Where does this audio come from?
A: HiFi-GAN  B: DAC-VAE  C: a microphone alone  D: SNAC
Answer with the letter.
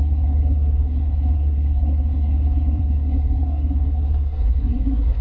D